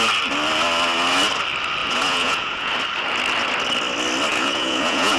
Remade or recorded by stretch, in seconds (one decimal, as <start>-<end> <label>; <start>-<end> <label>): 0.0-1.8 recorded; 1.8-2.7 remade; 2.7-4.3 recorded; 4.3-5.2 remade